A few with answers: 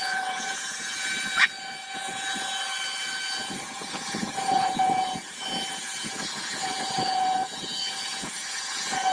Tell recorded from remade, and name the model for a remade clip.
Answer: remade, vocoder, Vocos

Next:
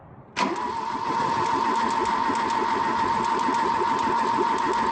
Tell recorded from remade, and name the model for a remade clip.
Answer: recorded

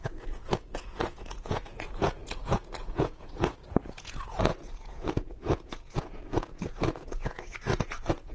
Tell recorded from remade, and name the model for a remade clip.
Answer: remade, vocoder, Vocos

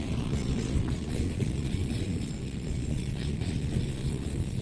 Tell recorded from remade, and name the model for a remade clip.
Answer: remade, vocoder, Vocos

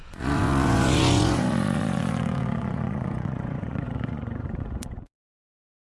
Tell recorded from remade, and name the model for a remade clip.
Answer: remade, vocoder, Vocos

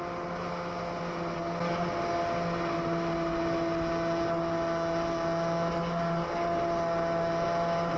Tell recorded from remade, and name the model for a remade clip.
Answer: recorded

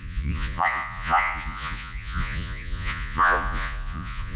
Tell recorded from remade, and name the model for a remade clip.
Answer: remade, vocoder, Vocos